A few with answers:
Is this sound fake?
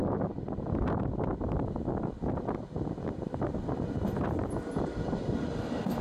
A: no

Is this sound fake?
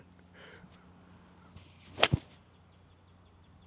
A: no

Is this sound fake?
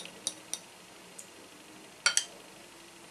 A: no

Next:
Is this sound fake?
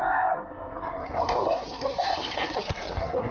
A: yes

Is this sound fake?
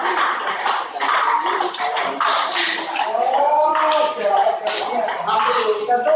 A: yes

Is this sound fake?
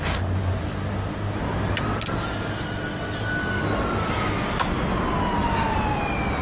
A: no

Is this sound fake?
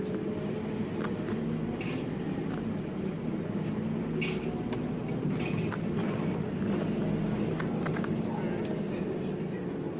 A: no